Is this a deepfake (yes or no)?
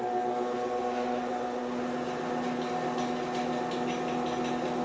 no